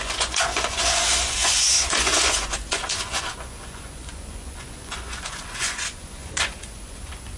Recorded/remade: remade